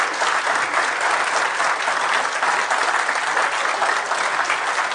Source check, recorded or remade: recorded